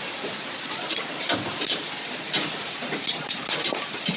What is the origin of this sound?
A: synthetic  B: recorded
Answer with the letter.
B